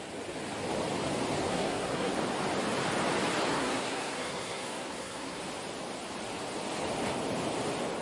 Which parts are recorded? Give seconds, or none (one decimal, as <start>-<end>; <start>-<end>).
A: 0.0-1.5; 2.1-3.5; 5.4-8.0